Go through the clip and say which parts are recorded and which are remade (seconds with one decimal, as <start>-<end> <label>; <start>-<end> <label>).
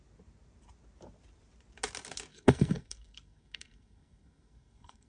0.0-2.3 recorded; 2.3-5.1 remade